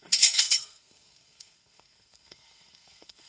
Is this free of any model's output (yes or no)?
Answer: no